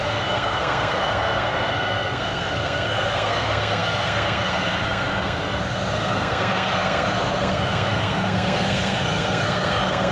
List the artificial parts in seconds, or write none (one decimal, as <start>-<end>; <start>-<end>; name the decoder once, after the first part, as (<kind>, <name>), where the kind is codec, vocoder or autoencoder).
0.0-10.1 (codec, SNAC)